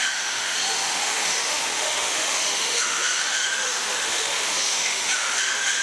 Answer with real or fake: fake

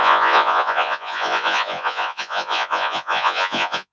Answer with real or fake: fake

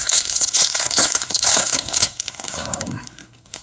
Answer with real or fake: fake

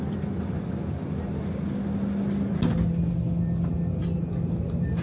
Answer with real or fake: real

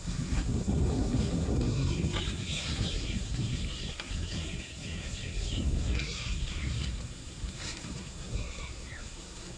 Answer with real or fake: fake